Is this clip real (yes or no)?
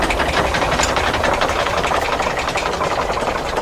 yes